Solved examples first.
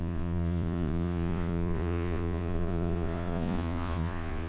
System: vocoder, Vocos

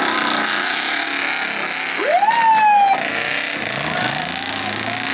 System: none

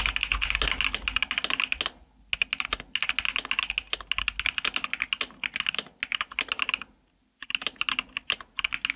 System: none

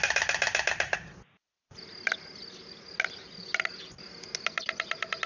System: none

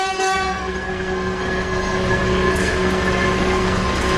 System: codec, SNAC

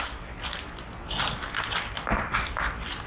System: none